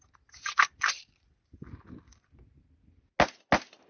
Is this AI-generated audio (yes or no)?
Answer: no